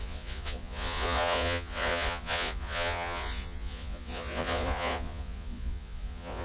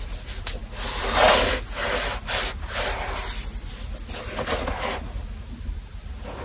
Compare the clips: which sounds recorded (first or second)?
second